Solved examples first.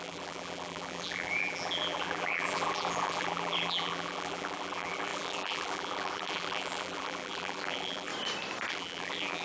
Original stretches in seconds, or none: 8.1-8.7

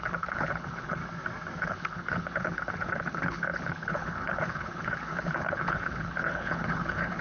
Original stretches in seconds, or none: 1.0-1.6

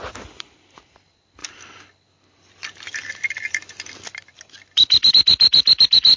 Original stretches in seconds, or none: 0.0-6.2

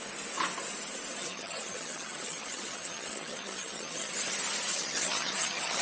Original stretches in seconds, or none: 0.0-1.2; 4.3-4.7

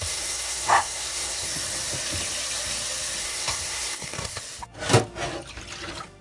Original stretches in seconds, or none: 1.5-3.2; 4.4-6.2

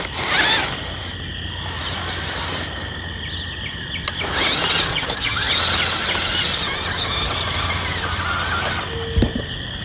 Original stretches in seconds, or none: 0.0-4.9; 5.5-9.8

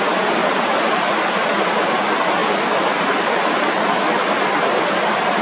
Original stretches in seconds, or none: 0.0-0.4; 1.1-5.4

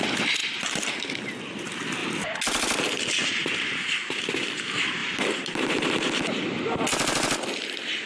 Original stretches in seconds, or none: 0.0-0.4; 0.9-3.4; 4.2-5.0; 5.9-8.1